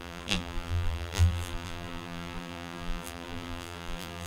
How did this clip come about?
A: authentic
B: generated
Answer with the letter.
B